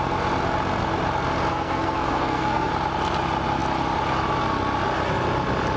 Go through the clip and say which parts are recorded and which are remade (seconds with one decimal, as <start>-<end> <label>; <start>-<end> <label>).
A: 0.0-1.5 recorded; 1.5-2.7 remade; 2.7-5.8 recorded